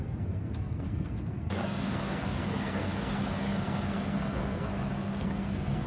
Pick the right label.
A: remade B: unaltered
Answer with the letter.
A